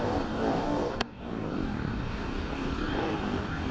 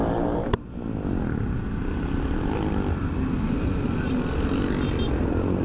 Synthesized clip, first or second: first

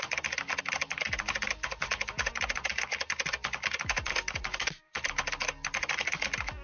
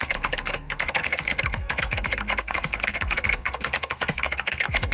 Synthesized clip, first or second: second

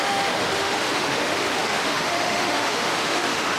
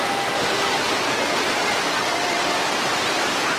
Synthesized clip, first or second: first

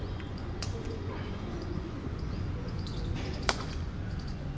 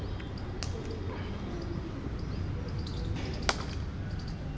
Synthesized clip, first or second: first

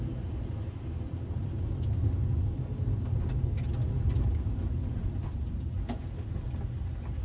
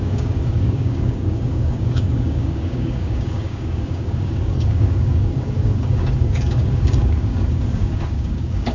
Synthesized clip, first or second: second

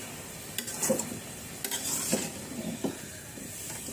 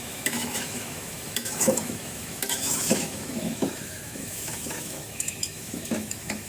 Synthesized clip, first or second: second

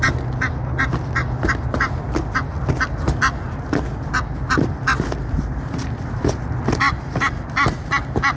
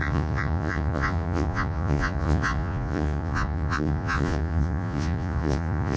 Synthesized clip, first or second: second